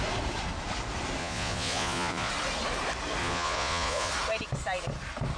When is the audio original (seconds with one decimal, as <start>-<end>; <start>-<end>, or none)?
0.0-1.2; 2.3-3.2; 4.1-5.4